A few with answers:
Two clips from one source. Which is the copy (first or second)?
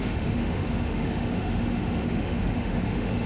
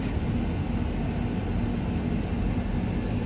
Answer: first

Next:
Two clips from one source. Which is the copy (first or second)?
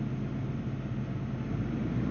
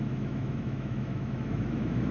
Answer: second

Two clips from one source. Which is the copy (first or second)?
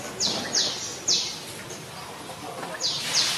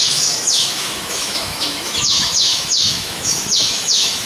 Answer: second